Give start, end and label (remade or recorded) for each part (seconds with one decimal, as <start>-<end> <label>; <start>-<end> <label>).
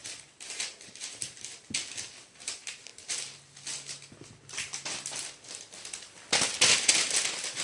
0.0-1.6 remade; 1.6-7.6 recorded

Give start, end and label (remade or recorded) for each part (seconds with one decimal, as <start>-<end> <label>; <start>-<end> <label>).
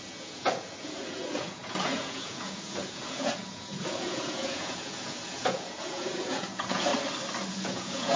0.0-6.9 remade; 6.9-7.5 recorded; 7.5-8.2 remade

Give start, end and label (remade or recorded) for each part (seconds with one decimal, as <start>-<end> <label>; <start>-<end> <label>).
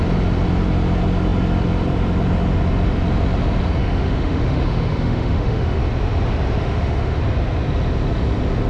0.0-3.8 recorded; 3.8-5.8 remade; 5.8-6.6 recorded; 6.6-7.2 remade; 7.2-8.7 recorded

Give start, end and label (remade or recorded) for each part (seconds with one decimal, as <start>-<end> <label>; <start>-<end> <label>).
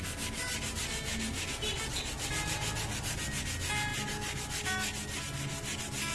0.0-6.1 recorded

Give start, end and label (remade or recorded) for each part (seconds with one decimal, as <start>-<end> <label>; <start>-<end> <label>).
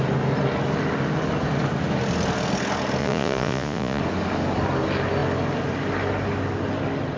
0.0-3.0 recorded; 3.0-4.0 remade; 4.0-7.2 recorded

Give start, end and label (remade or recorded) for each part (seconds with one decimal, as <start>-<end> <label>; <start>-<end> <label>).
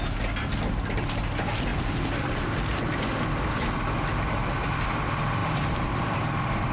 0.0-1.7 recorded; 1.7-3.2 remade; 3.2-4.4 recorded; 4.4-5.0 remade; 5.0-5.4 recorded; 5.4-6.7 remade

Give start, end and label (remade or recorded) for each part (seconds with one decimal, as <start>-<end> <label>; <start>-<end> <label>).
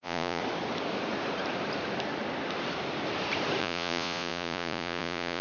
0.0-0.4 remade; 0.4-3.6 recorded; 3.6-5.4 remade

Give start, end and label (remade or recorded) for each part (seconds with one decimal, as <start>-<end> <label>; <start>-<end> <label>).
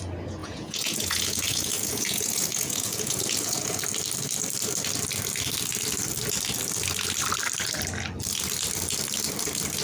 0.0-0.4 recorded; 0.4-3.8 remade; 3.8-9.8 recorded